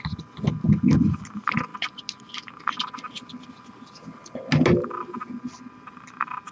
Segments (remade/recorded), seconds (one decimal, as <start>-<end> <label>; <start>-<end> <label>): 0.0-6.5 recorded